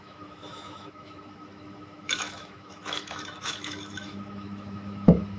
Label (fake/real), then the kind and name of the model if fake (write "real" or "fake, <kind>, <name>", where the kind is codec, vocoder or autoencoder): fake, autoencoder, DAC-VAE